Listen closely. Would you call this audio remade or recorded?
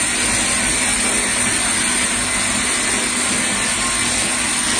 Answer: recorded